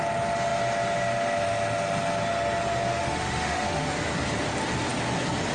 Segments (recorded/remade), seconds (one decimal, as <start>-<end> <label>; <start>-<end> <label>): 0.0-2.9 recorded; 2.9-3.9 remade; 3.9-5.5 recorded

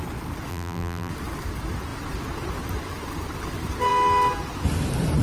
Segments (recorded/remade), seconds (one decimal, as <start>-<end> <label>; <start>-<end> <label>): 0.0-0.5 recorded; 0.5-1.1 remade; 1.1-5.2 recorded

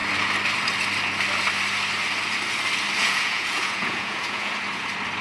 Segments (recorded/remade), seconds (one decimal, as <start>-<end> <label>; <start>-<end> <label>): 0.0-3.0 recorded; 3.0-4.5 remade; 4.5-5.2 recorded

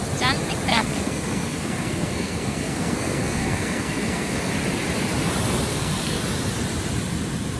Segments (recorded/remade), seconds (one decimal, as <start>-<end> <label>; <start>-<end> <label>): 0.0-0.7 recorded; 0.7-4.5 remade; 4.5-5.7 recorded; 5.7-6.2 remade; 6.2-7.6 recorded